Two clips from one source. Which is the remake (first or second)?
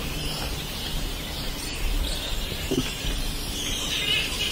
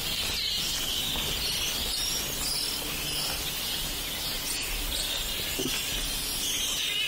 first